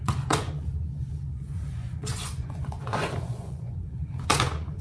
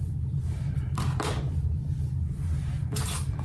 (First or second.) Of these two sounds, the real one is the second